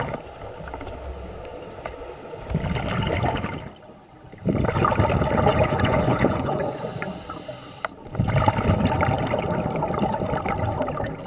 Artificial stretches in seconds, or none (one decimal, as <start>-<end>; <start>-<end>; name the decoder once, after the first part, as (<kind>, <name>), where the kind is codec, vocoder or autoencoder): 5.5-7.1 (vocoder, Vocos)